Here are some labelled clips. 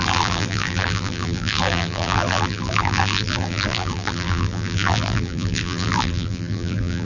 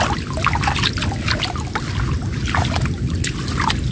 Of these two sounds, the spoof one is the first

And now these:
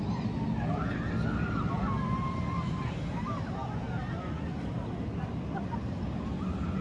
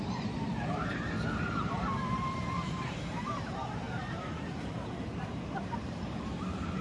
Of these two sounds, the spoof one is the second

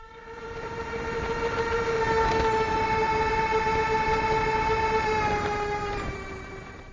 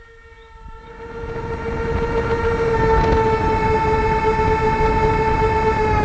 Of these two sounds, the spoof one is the first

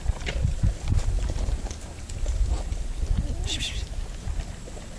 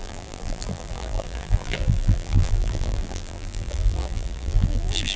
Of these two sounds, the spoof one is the second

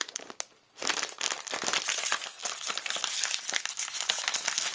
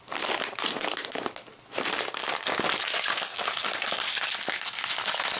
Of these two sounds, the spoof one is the first